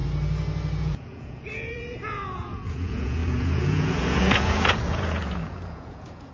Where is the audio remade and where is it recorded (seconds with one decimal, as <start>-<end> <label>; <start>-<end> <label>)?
0.0-0.8 recorded; 0.8-6.3 remade